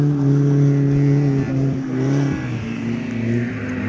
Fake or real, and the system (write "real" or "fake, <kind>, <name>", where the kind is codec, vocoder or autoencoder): real